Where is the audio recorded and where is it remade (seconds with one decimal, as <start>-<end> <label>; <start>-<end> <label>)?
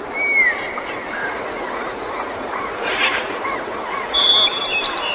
0.0-1.2 recorded; 1.2-4.3 remade; 4.3-5.1 recorded